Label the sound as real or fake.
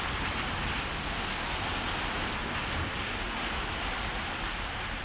real